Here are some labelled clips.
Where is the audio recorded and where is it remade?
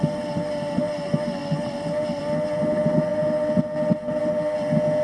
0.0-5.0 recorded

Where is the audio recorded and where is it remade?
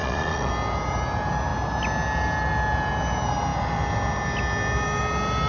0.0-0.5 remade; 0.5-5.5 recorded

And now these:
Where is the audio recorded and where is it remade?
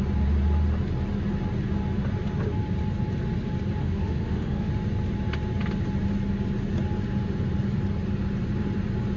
0.0-3.8 recorded; 3.8-4.7 remade; 4.7-9.2 recorded